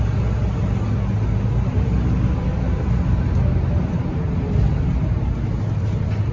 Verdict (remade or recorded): recorded